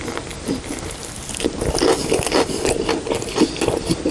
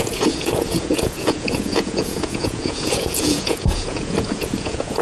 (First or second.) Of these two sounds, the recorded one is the first